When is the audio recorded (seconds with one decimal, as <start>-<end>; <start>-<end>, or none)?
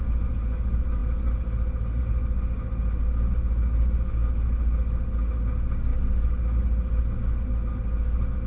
0.0-8.5